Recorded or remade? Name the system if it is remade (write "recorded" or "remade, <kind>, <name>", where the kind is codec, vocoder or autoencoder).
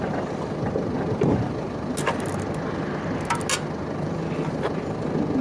recorded